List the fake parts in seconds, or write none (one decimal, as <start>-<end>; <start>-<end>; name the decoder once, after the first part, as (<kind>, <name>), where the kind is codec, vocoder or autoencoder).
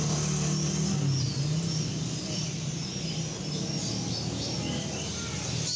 none